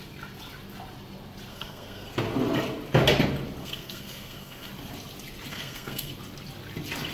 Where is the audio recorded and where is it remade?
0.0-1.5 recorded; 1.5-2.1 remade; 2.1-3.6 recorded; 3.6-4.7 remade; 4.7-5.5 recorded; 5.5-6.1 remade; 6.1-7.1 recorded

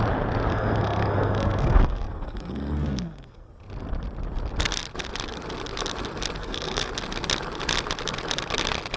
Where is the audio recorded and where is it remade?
0.0-0.5 recorded; 0.5-3.5 remade; 3.5-6.4 recorded; 6.4-6.9 remade; 6.9-9.0 recorded

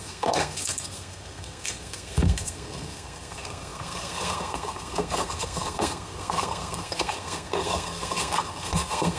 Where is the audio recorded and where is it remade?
0.0-9.2 remade

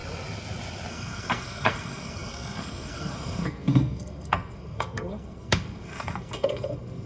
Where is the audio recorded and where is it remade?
0.0-0.9 recorded; 0.9-7.1 remade

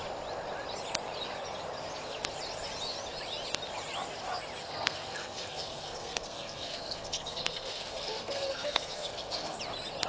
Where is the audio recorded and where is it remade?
0.0-4.6 recorded; 4.6-9.6 remade; 9.6-10.1 recorded

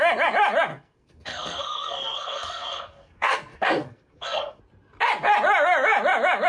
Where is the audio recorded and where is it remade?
0.0-0.7 recorded; 0.7-4.6 remade; 4.6-6.5 recorded